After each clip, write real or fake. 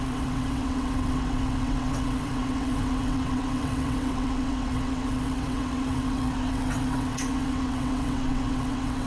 fake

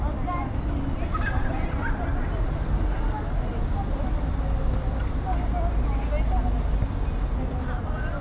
real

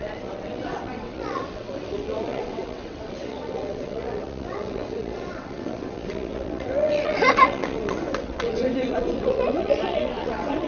fake